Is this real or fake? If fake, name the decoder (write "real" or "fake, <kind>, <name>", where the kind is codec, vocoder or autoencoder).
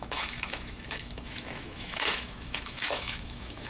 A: fake, autoencoder, DAC-VAE